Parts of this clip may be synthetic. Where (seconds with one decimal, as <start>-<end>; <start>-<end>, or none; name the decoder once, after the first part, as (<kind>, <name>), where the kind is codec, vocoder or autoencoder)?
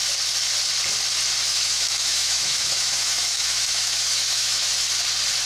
1.5-4.7 (autoencoder, DAC-VAE)